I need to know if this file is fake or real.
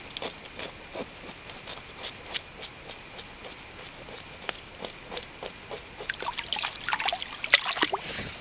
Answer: real